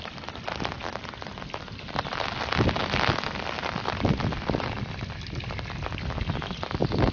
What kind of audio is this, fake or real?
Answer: real